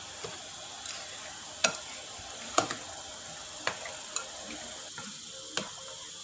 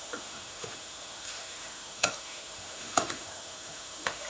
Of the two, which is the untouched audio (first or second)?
first